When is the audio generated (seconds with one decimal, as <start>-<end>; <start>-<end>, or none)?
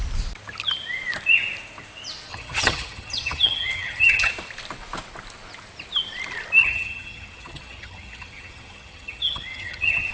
2.3-4.3; 6.6-10.1